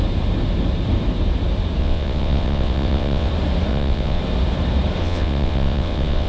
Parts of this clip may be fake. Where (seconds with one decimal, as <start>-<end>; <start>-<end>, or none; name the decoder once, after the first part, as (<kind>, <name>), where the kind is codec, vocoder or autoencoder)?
1.8-3.3 (vocoder, WaveNeXt); 3.7-4.2; 5.0-6.3